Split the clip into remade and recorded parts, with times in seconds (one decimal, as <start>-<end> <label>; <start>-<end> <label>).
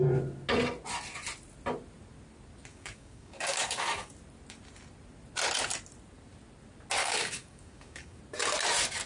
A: 0.0-2.7 recorded; 2.7-4.1 remade; 4.1-7.0 recorded; 7.0-8.2 remade; 8.2-9.1 recorded